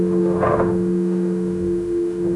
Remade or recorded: remade